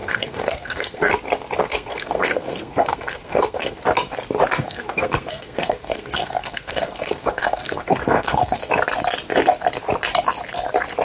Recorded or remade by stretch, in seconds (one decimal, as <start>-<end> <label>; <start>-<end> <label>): 0.0-1.1 remade; 1.1-1.6 recorded; 1.6-3.8 remade; 3.8-4.6 recorded; 4.6-8.7 remade; 8.7-11.0 recorded